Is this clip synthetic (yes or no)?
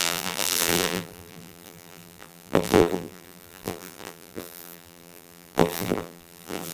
yes